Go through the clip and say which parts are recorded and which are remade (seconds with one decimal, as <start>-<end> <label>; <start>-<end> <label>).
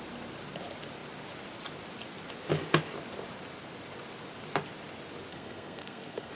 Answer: 0.0-5.3 recorded; 5.3-6.3 remade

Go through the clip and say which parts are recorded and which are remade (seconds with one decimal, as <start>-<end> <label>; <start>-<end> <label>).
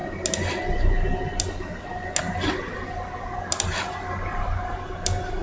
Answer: 0.0-5.4 recorded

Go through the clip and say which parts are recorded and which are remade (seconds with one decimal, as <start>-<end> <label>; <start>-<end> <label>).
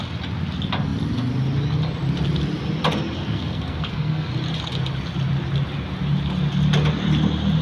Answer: 0.0-3.2 recorded; 3.2-4.3 remade; 4.3-7.6 recorded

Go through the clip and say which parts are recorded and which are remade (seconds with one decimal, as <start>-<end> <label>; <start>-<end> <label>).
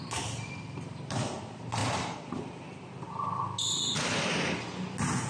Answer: 0.0-5.3 recorded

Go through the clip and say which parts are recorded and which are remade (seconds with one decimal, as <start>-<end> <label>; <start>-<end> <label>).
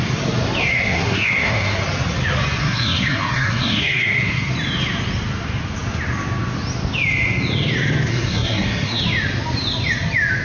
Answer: 0.0-0.6 recorded; 0.6-1.8 remade; 1.8-2.6 recorded; 2.6-4.5 remade; 4.5-8.1 recorded; 8.1-9.0 remade; 9.0-10.4 recorded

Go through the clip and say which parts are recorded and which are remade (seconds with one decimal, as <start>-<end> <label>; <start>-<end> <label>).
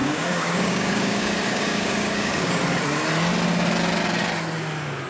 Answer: 0.0-2.6 remade; 2.6-5.1 recorded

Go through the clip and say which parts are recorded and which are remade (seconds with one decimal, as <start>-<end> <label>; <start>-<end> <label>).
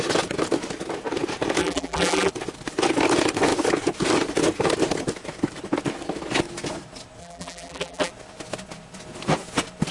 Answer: 0.0-1.6 recorded; 1.6-2.3 remade; 2.3-7.2 recorded; 7.2-8.1 remade; 8.1-9.9 recorded